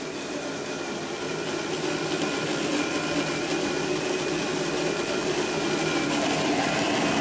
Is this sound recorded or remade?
recorded